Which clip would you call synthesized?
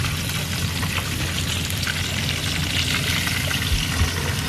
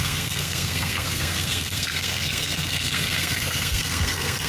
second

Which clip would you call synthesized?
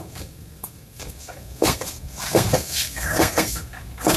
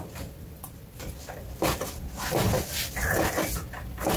first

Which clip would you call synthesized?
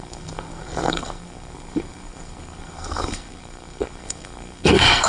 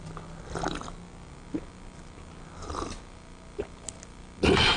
first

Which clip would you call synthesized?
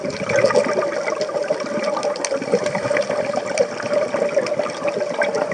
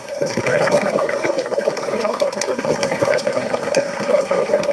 second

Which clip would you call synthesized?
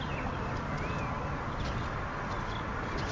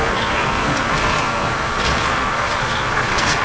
second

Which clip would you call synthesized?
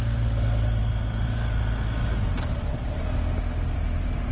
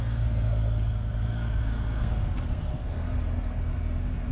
second